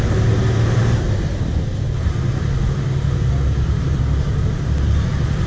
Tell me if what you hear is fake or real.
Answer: real